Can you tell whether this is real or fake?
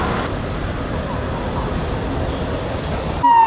real